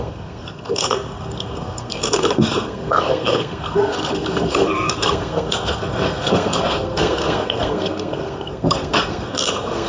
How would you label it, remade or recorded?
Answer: remade